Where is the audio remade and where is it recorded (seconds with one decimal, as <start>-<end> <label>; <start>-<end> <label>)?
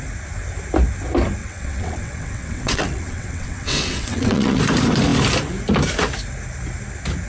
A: 0.0-1.4 recorded; 1.4-4.6 remade; 4.6-7.3 recorded